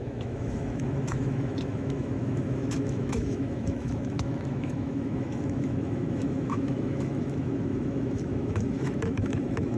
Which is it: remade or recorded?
remade